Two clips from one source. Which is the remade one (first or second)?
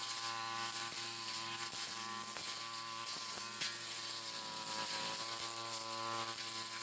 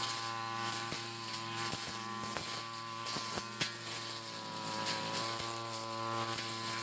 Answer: first